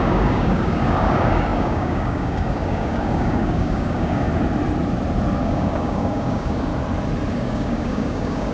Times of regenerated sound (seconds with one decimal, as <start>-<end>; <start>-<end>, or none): 0.0-4.3; 5.4-6.7; 7.3-8.5